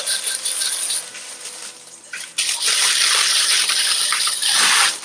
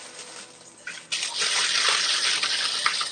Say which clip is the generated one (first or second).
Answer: first